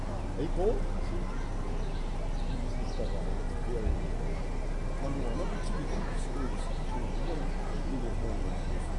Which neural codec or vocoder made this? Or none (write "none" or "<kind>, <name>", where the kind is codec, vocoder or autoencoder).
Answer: none